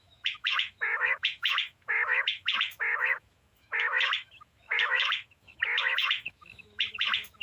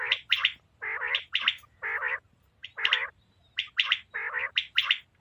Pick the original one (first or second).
second